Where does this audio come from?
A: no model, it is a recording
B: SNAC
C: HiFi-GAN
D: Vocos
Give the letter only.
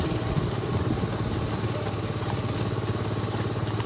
A